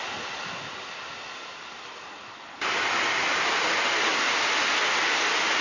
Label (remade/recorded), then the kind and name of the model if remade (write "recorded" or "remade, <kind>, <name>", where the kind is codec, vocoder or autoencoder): recorded